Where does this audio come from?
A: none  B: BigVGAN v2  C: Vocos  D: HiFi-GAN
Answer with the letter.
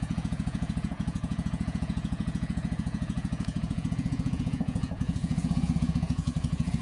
C